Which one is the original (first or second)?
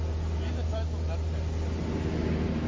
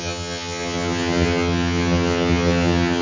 first